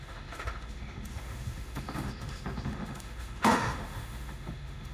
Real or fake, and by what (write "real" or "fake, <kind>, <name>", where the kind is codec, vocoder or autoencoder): fake, autoencoder, DAC-VAE